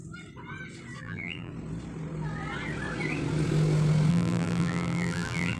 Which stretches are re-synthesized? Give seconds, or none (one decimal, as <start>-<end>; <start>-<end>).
1.0-1.5; 4.1-5.6